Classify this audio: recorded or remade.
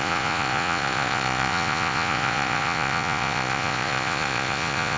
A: remade